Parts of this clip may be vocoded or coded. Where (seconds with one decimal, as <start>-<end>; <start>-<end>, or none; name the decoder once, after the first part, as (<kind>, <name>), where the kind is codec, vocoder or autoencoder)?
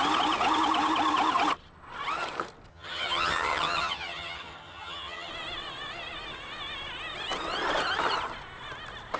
2.7-5.3 (vocoder, HiFi-GAN)